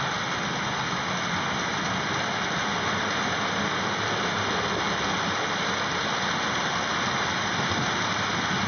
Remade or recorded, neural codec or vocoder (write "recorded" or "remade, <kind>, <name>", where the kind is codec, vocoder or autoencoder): recorded